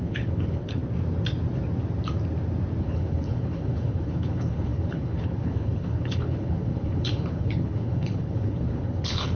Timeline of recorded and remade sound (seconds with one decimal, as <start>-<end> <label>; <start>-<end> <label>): 0.0-0.8 remade; 0.8-2.8 recorded; 2.8-9.4 remade